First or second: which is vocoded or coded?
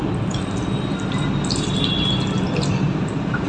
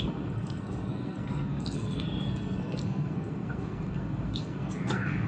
second